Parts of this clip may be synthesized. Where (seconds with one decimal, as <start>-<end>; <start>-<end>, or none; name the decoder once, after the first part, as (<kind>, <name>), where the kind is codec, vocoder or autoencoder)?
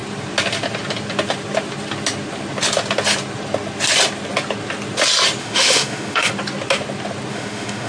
5.4-6.3 (autoencoder, DAC-VAE); 7.3-7.9